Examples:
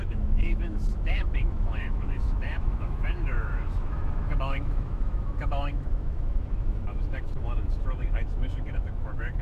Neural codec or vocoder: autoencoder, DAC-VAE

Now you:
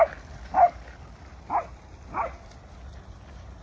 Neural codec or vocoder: none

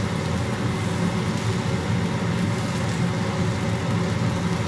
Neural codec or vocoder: none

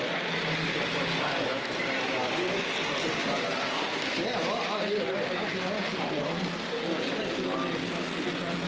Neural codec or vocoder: none